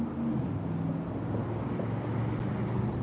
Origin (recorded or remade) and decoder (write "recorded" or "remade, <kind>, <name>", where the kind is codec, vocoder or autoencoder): recorded